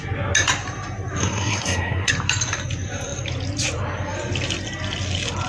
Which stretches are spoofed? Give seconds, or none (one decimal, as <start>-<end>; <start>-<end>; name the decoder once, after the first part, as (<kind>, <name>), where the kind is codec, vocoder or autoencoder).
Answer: 1.2-2.1 (codec, SNAC)